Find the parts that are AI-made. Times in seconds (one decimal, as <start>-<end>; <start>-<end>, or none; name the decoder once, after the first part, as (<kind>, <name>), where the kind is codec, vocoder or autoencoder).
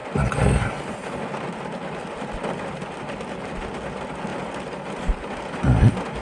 none